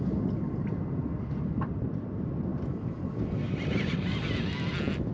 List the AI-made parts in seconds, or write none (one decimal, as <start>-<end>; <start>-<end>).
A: none

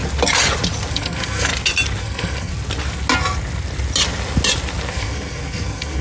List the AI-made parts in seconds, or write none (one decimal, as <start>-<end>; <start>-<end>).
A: 0.9-1.5; 2.0-2.5; 4.9-6.0